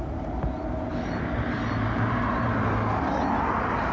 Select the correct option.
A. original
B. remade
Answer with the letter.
A